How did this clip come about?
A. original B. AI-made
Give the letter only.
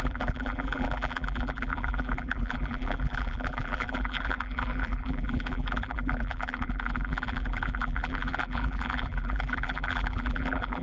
B